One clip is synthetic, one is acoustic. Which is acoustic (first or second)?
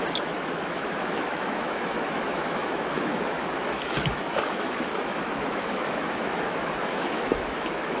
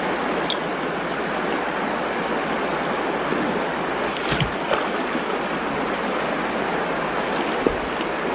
second